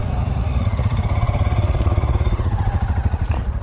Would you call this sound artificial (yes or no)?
yes